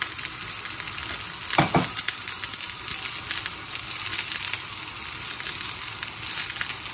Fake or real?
real